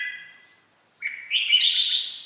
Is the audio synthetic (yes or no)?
no